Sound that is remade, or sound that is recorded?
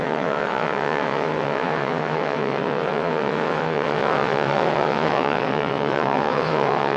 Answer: remade